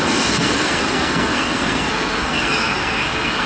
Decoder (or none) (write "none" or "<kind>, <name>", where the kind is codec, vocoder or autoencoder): codec, SNAC